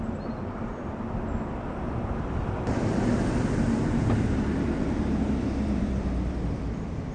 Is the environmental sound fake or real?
fake